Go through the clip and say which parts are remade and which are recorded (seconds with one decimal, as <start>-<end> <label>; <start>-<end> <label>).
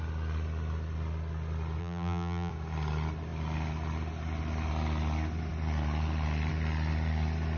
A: 0.0-1.8 recorded; 1.8-2.5 remade; 2.5-7.6 recorded